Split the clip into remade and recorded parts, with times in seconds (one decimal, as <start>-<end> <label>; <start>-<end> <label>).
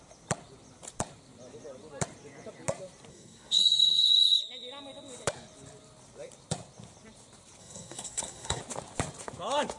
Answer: 0.0-3.1 recorded; 3.1-4.4 remade; 4.4-7.6 recorded; 7.6-8.6 remade; 8.6-9.8 recorded